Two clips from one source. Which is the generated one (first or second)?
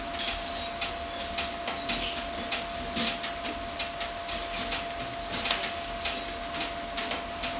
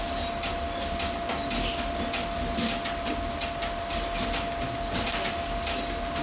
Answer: second